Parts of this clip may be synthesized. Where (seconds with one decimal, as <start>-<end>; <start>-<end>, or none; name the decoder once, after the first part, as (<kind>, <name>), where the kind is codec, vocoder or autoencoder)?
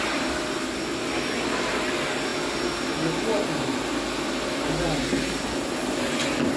none